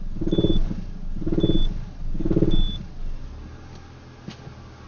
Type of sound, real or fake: real